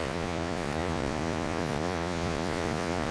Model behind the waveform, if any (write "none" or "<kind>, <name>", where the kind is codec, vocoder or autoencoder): vocoder, Vocos